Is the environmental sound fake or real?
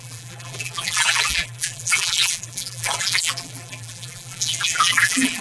fake